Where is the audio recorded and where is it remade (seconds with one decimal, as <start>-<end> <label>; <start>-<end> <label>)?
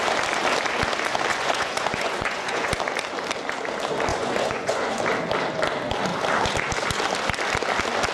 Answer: 0.0-1.3 recorded; 1.3-2.7 remade; 2.7-4.1 recorded; 4.1-5.0 remade; 5.0-8.1 recorded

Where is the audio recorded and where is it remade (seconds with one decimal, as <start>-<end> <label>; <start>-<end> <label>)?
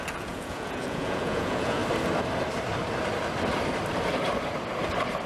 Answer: 0.0-1.8 remade; 1.8-5.3 recorded